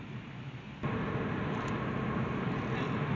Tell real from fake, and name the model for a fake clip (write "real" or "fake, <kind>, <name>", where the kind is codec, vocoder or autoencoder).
real